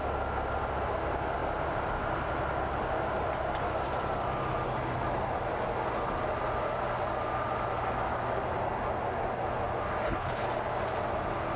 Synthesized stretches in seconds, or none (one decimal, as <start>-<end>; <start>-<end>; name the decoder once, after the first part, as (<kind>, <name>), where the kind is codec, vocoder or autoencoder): 10.0-10.5 (codec, HILCodec)